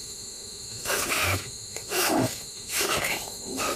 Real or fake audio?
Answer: fake